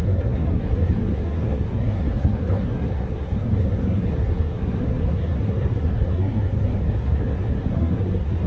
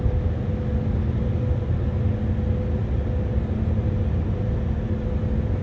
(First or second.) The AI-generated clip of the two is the first